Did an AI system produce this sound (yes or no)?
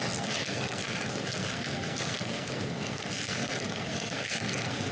yes